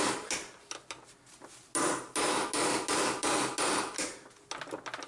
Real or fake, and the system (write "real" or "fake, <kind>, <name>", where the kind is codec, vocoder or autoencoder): real